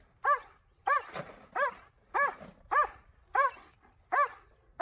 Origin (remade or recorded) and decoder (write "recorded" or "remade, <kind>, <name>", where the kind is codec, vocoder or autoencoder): recorded